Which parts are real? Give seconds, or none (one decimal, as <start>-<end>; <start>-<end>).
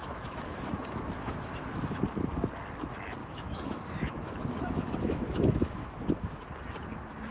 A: 2.0-3.2; 6.4-7.3